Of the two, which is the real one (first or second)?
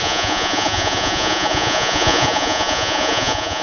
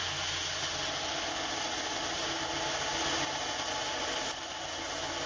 second